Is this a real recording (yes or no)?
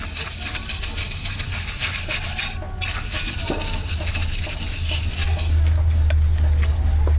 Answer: yes